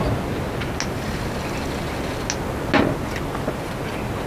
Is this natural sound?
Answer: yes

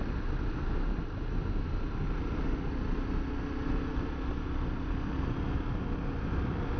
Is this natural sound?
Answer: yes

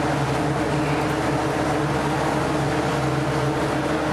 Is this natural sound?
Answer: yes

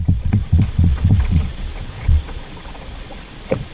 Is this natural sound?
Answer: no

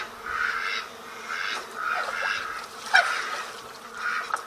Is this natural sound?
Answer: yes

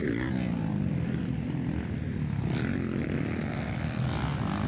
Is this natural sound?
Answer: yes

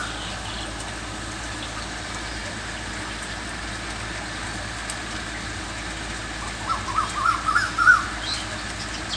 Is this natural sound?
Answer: yes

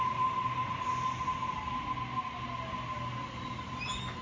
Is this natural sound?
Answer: yes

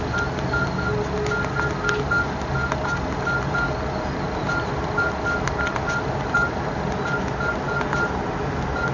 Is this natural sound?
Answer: yes